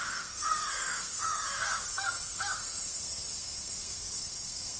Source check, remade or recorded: remade